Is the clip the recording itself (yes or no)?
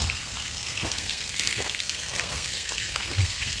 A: no